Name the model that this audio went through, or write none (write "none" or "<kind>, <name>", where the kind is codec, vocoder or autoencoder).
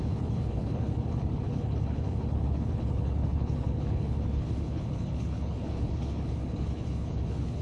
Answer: codec, HILCodec